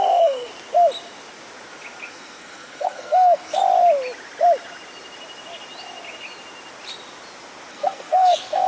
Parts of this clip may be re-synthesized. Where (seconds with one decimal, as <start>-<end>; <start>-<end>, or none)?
0.0-0.5; 2.1-3.6; 7.7-8.7